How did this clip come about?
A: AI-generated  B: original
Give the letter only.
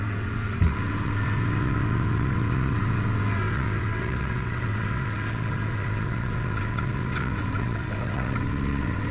A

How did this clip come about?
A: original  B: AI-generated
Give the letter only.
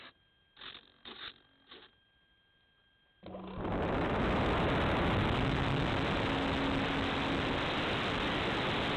A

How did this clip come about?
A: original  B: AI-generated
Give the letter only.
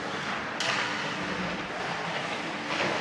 A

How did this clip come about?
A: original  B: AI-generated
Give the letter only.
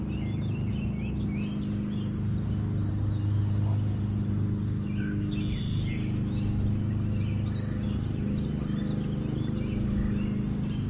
A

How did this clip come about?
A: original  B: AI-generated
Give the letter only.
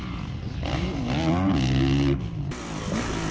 A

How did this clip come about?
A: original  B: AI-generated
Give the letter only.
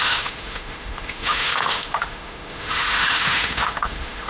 B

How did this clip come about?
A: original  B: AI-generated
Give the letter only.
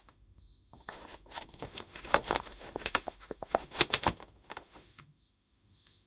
B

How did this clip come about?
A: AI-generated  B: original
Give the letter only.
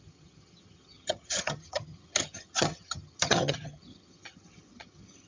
A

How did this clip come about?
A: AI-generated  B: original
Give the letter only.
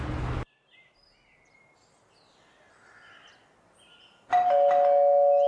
B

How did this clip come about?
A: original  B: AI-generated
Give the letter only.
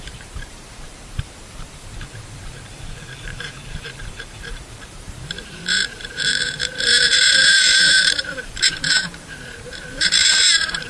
B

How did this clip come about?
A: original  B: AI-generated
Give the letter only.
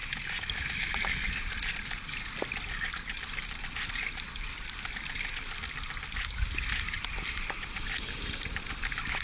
A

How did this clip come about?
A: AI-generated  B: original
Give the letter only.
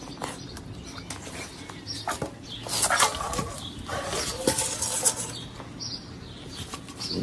B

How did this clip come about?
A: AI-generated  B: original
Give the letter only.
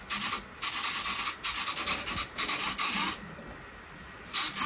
B